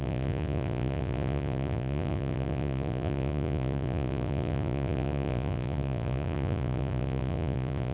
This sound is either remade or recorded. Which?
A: remade